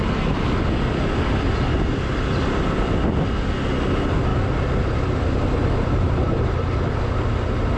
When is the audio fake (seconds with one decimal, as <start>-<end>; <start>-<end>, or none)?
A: none